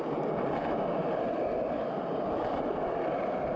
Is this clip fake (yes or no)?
no